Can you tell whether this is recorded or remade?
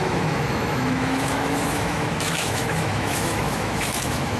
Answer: remade